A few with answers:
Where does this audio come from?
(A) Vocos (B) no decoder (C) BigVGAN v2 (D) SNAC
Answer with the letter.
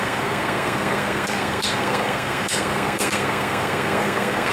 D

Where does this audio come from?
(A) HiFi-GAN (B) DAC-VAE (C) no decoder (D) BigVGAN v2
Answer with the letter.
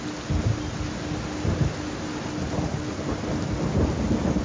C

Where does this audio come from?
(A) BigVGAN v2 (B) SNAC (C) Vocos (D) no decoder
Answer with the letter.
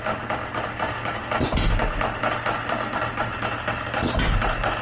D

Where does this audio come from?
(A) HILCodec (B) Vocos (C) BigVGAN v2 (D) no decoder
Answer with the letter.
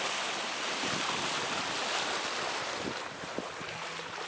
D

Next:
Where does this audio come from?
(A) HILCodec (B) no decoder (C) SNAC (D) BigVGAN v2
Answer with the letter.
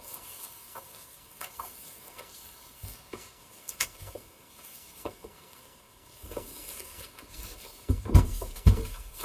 C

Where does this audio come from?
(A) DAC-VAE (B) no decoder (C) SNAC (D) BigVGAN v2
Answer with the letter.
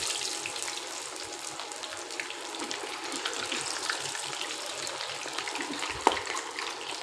B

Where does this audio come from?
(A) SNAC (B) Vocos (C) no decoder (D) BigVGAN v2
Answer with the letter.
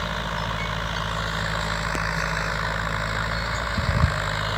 C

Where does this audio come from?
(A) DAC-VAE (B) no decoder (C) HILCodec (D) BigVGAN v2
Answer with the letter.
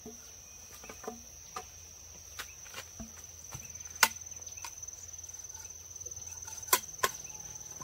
B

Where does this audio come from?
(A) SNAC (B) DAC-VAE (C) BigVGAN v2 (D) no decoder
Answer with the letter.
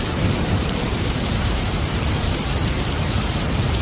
C